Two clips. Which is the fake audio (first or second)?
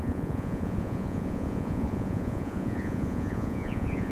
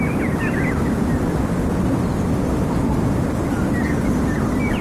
first